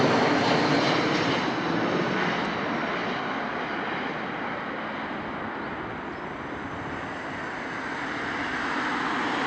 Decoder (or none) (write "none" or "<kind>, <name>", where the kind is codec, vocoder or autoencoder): none